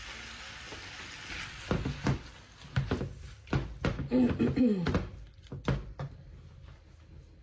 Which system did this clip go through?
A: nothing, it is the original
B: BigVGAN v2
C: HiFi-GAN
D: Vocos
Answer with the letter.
A